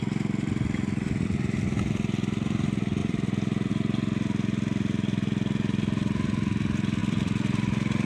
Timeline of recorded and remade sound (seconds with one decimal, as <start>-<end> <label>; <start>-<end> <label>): 0.0-3.0 recorded; 3.0-3.7 remade; 3.7-7.0 recorded; 7.0-8.1 remade